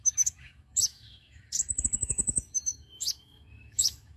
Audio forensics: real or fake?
fake